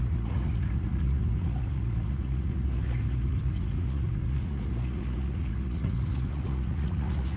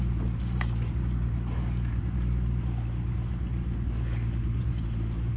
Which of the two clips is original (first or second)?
second